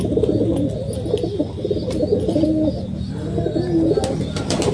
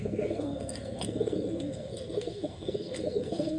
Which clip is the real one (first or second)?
first